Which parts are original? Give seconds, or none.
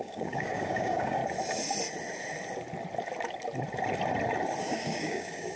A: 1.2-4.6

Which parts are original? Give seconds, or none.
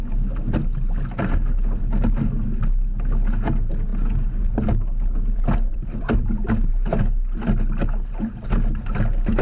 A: 0.0-5.7; 6.7-9.4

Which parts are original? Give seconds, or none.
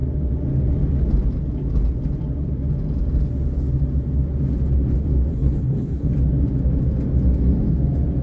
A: 0.0-5.3; 6.1-8.2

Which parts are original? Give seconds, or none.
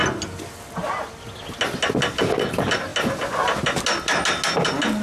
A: 0.0-5.0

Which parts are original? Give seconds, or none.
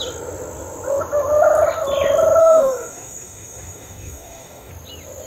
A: 0.0-2.4; 4.7-5.3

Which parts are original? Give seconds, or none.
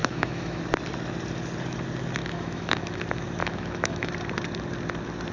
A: 0.6-2.2; 3.0-3.4; 4.1-5.3